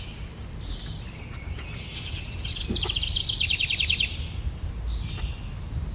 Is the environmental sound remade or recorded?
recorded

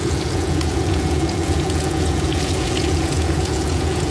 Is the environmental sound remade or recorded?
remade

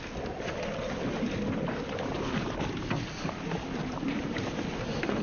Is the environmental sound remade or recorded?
recorded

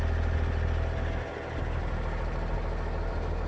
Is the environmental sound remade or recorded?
recorded